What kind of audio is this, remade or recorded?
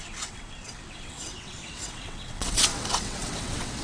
remade